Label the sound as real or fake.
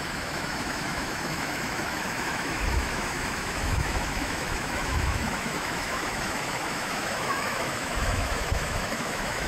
fake